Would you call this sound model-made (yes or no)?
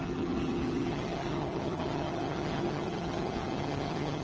yes